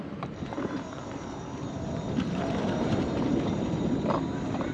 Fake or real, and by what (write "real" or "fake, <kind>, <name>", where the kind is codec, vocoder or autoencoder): fake, vocoder, BigVGAN v2